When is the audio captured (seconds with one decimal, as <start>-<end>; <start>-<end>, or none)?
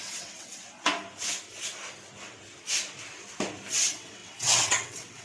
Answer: 0.6-3.7